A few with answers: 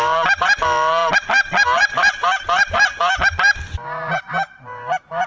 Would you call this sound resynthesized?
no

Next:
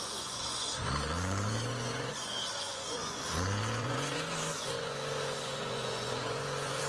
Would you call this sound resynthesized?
yes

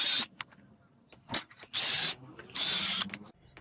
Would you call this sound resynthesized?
no